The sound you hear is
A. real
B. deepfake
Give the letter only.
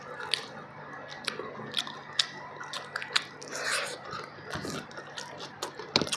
A